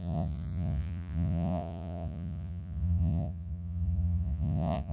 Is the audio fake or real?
fake